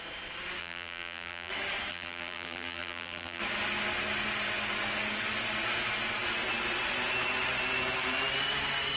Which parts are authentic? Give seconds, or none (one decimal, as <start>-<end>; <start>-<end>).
0.0-0.6; 1.5-1.9; 3.4-9.0